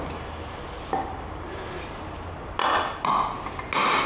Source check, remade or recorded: recorded